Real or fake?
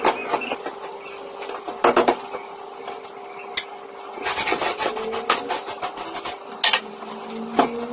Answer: real